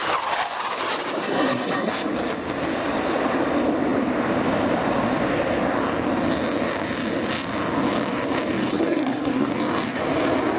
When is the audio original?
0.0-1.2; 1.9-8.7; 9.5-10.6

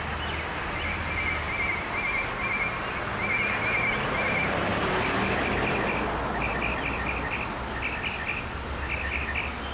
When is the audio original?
0.0-9.7

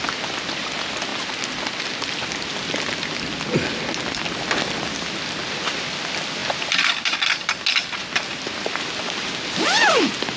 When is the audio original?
0.0-10.4

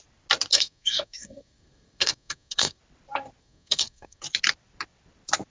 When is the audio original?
0.0-0.5; 2.8-3.4; 4.2-5.5

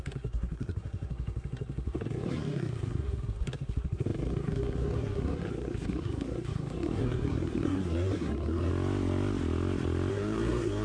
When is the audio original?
8.7-10.1

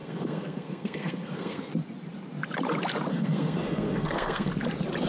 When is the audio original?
1.7-3.1; 4.5-5.1

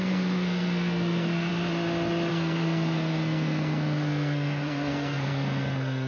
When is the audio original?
1.5-2.3

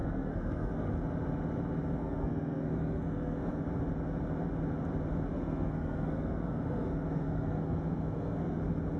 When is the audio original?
0.9-2.0; 3.6-5.3; 8.6-9.0